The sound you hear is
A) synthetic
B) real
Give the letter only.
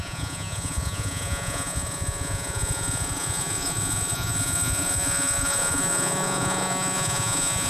A